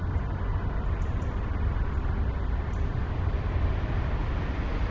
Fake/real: real